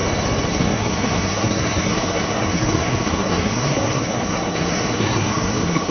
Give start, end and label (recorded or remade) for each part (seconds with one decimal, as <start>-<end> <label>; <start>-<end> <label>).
0.0-0.5 recorded; 0.5-5.9 remade